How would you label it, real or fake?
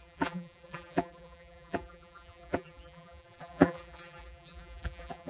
fake